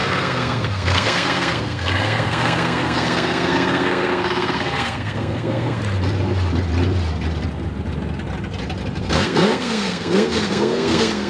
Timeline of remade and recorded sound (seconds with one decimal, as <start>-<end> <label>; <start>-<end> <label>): 0.0-5.8 remade; 5.8-9.0 recorded; 9.0-11.3 remade